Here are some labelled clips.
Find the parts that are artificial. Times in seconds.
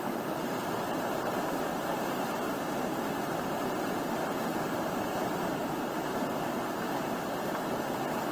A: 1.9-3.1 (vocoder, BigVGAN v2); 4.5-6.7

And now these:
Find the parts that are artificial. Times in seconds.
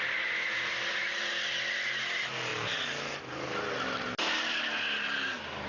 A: none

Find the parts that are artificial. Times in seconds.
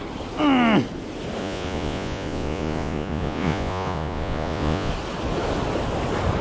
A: 1.4-4.9 (vocoder, Vocos)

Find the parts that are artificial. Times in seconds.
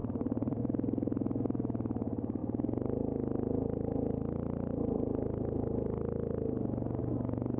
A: 0.0-0.6 (vocoder, Vocos)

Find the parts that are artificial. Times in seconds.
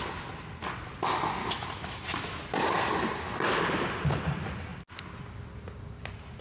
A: 1.4-2.4 (autoencoder, DAC-VAE)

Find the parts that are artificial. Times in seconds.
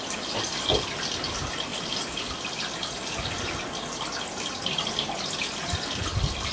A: none